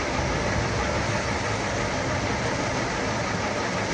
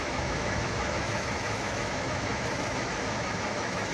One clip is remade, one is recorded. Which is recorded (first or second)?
first